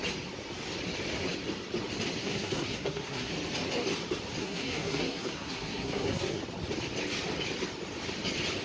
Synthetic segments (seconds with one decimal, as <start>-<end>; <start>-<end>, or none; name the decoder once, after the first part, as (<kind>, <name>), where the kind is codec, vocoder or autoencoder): 2.2-3.3 (codec, SNAC); 4.4-6.4